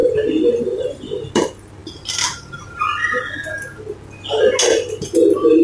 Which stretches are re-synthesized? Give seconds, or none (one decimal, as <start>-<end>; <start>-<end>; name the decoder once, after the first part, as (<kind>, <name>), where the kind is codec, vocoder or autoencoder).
1.8-3.2 (vocoder, BigVGAN v2)